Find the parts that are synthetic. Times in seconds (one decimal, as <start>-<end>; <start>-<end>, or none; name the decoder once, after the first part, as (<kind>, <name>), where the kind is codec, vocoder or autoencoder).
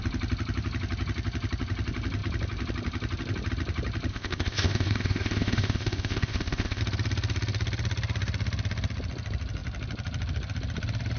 4.1-6.8 (codec, ZipCodec)